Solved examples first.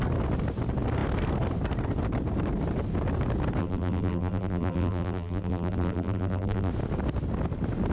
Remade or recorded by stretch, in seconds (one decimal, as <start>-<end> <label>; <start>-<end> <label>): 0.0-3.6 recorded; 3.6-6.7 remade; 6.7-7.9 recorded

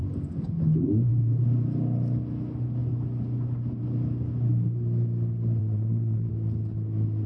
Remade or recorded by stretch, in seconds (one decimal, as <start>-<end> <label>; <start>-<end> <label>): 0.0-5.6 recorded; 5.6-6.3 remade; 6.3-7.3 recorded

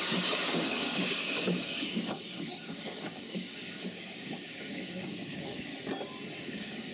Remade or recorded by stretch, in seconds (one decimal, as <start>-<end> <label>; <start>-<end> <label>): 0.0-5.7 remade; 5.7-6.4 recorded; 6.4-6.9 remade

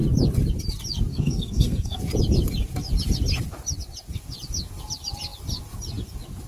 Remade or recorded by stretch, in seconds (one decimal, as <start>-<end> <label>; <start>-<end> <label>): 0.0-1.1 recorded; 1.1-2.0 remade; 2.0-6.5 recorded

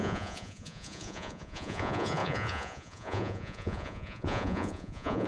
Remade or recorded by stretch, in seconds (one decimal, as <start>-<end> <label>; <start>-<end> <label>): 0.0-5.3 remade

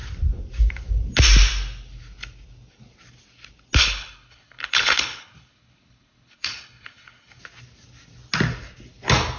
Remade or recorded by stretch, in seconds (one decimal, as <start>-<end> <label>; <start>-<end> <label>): 0.0-3.8 recorded; 3.8-7.4 remade; 7.4-9.4 recorded